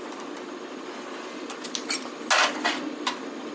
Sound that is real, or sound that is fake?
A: real